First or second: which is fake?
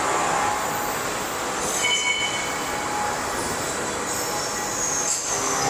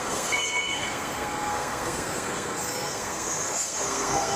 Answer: second